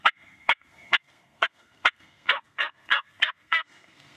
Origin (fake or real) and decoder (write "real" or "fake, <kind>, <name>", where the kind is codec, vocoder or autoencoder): fake, codec, SNAC